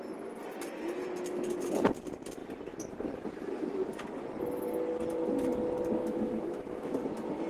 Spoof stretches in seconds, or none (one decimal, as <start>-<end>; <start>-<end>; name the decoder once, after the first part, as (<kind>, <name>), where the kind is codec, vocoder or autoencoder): 6.0-7.0 (autoencoder, DAC-VAE)